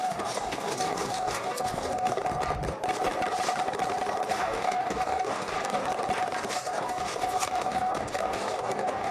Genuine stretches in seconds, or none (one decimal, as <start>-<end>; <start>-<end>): 2.2-4.3; 5.8-6.5